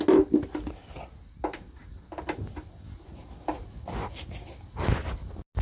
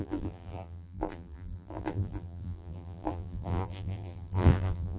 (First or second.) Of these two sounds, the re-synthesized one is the second